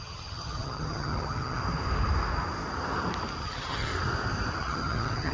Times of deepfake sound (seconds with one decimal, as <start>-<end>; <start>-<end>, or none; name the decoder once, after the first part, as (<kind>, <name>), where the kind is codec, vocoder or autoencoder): 0.0-1.6 (vocoder, HiFi-GAN); 3.4-3.9; 4.6-5.3